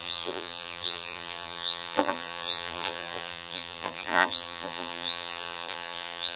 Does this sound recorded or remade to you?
remade